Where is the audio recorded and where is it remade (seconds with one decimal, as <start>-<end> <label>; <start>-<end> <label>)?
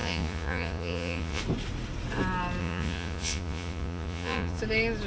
0.0-1.4 remade; 1.4-2.6 recorded; 2.6-4.6 remade; 4.6-5.1 recorded